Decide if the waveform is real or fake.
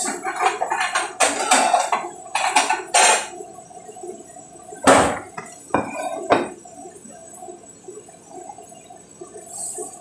real